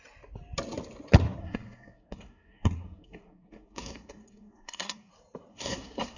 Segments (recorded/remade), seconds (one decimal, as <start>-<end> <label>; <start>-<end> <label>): 0.0-1.4 recorded; 1.4-5.1 remade; 5.1-5.5 recorded; 5.5-6.2 remade